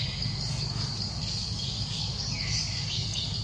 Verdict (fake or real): fake